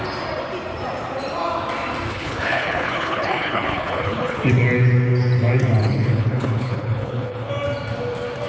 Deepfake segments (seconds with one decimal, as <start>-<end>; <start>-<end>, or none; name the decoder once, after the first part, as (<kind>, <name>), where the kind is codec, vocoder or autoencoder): 2.1-4.4 (codec, HILCodec); 5.8-7.5